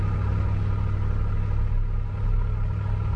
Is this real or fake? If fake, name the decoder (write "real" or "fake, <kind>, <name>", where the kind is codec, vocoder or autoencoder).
real